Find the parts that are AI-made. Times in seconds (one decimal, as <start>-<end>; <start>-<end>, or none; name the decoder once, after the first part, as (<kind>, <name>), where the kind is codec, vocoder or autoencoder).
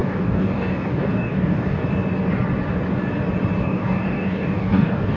0.0-1.8 (codec, DAC); 3.6-5.2